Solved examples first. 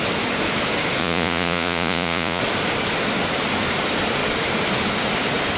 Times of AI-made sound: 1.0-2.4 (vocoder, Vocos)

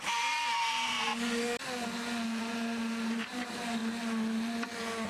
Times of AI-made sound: 0.0-1.1 (vocoder, BigVGAN v2); 2.4-3.8

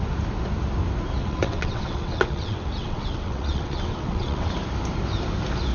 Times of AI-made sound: 1.2-4.5 (vocoder, WaveNeXt)